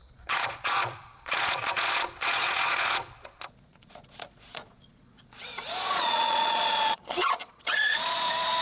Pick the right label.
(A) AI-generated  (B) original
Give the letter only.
A